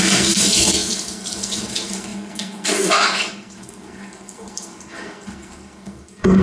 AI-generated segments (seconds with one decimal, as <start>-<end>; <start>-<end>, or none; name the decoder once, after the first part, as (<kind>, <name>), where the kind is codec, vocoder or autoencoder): 0.0-6.4 (codec, SNAC)